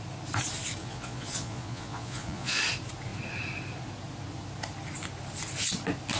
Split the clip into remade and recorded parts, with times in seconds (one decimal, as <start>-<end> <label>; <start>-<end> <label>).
0.0-0.8 recorded; 0.8-2.6 remade; 2.6-6.2 recorded